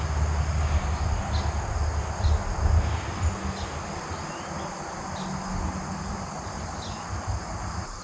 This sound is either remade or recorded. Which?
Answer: recorded